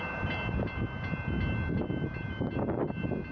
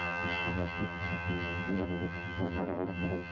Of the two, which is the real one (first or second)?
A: first